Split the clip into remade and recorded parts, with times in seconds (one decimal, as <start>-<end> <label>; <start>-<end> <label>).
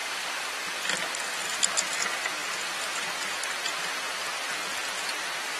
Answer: 0.0-5.6 recorded